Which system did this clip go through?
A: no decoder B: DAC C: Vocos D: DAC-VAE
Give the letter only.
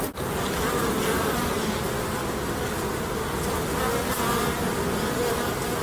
A